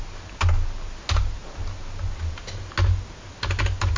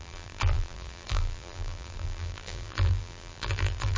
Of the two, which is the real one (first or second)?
first